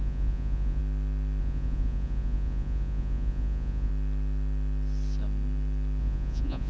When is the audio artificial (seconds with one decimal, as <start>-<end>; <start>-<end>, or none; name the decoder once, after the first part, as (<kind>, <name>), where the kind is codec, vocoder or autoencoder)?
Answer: 0.0-0.8 (vocoder, Vocos); 1.4-3.9; 6.0-6.7